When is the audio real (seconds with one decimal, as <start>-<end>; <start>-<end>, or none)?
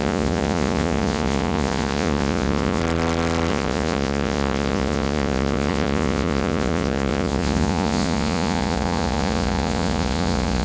2.8-3.5